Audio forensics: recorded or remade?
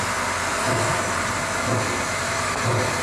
recorded